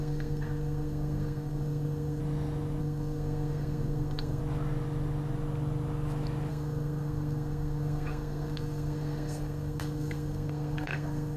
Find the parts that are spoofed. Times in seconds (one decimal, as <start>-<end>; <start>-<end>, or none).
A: 0.0-2.2; 2.8-4.4; 6.5-11.4